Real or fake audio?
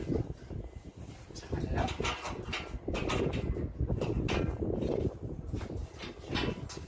real